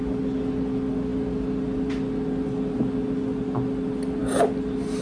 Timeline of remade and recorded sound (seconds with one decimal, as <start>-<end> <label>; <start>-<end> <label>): 0.0-5.0 recorded

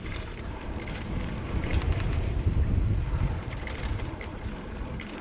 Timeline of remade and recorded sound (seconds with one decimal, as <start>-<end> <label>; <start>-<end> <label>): 0.0-5.2 remade

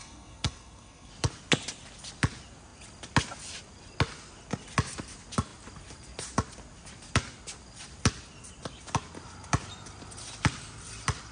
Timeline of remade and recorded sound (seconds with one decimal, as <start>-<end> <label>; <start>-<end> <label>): 0.0-1.1 remade; 1.1-11.3 recorded

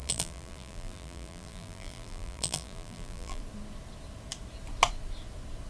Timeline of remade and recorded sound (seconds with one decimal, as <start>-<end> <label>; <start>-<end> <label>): 0.0-3.4 remade; 3.4-5.7 recorded

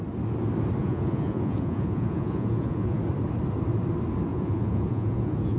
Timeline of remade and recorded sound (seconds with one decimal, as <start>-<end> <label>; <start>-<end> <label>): 0.0-0.8 recorded; 0.8-3.0 remade; 3.0-4.3 recorded; 4.3-5.6 remade

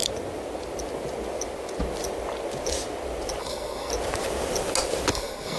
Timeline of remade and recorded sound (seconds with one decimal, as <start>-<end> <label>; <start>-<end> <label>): 0.0-3.4 recorded; 3.4-3.9 remade; 3.9-5.1 recorded; 5.1-5.6 remade